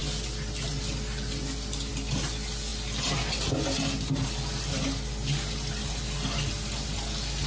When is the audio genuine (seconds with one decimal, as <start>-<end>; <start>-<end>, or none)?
0.0-7.5